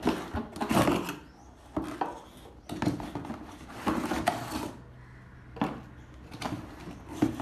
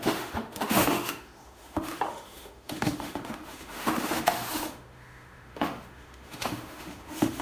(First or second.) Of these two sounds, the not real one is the second